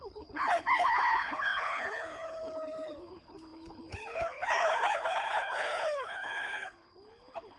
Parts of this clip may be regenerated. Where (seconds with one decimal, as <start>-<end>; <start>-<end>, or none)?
0.0-7.6